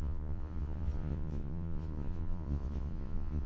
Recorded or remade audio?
remade